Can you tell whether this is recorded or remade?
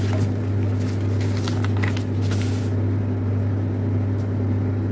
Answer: recorded